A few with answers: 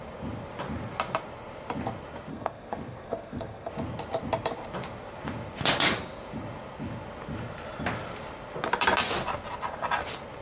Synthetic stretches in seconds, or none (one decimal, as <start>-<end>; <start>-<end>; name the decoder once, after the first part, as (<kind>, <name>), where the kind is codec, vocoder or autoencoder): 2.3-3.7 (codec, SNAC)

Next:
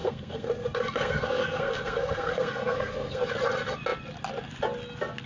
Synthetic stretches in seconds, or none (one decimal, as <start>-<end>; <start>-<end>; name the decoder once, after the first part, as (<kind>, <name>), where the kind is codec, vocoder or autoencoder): 0.0-3.2 (codec, SNAC)

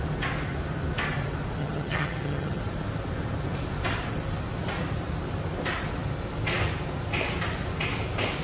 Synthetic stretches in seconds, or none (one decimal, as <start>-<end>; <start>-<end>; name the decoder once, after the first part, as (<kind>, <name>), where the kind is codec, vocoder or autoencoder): 1.6-2.6 (vocoder, HiFi-GAN)

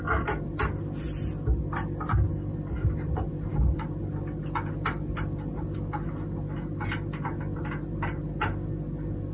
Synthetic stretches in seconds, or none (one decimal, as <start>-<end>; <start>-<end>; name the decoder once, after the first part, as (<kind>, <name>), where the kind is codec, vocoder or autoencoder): none

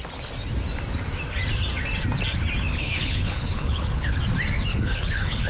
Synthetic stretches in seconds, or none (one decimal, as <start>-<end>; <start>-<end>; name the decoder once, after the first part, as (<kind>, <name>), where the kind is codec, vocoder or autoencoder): 2.7-4.2 (codec, HILCodec); 4.7-5.5

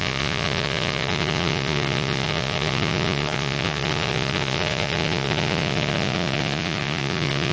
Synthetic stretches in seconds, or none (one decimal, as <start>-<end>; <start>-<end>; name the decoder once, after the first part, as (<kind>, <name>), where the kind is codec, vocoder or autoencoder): 0.0-7.5 (vocoder, Vocos)